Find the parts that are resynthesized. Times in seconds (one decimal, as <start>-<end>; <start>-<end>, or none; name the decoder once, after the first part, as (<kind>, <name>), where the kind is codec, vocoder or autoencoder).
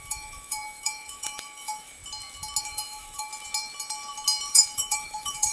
0.0-2.0 (autoencoder, DAC-VAE); 2.6-3.3; 4.5-5.5